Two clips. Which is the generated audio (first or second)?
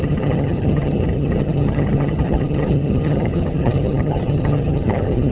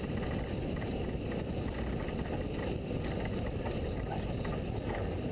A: first